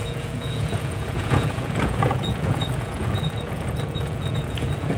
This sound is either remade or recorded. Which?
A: remade